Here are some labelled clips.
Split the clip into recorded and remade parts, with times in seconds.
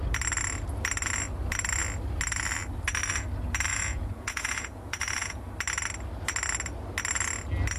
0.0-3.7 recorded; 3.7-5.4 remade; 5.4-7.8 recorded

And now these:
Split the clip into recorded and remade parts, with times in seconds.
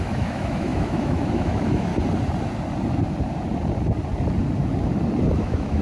0.0-1.9 remade; 1.9-5.3 recorded; 5.3-5.8 remade